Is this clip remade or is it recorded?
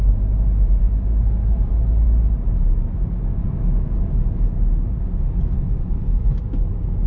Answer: recorded